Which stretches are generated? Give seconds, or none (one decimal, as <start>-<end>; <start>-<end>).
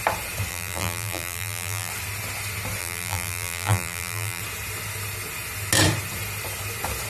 0.5-1.9; 2.8-4.4